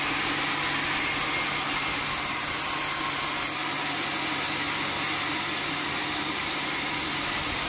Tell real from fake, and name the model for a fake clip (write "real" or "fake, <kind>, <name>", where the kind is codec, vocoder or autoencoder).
real